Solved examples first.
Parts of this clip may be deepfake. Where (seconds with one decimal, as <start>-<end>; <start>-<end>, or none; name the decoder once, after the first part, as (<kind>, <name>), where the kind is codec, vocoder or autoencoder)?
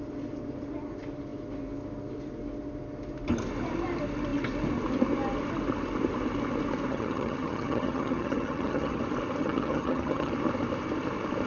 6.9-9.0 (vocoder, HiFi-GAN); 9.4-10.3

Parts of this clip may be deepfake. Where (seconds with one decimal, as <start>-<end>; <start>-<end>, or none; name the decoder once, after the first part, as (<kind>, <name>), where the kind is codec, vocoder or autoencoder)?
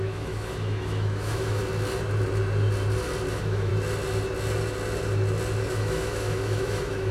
0.0-1.6 (autoencoder, DAC-VAE); 3.3-3.7; 5.7-7.1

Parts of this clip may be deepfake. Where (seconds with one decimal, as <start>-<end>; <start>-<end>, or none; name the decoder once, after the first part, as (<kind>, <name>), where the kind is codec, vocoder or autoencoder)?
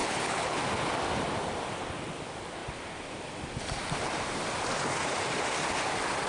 0.0-0.6 (codec, HILCodec)